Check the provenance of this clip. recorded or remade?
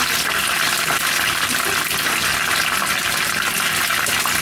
recorded